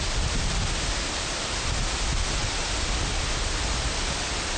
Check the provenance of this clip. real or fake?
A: real